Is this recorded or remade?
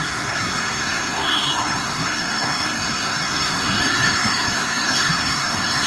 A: remade